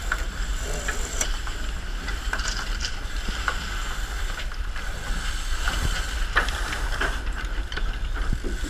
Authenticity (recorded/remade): recorded